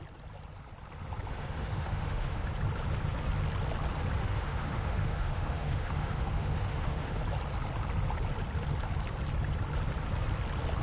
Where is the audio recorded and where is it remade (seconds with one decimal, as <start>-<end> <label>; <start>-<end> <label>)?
0.0-1.3 recorded; 1.3-2.5 remade; 2.5-4.2 recorded; 4.2-7.2 remade; 7.2-10.8 recorded